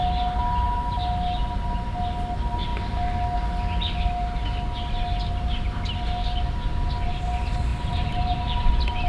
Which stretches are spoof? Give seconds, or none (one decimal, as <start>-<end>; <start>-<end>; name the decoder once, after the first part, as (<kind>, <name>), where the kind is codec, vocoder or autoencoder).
none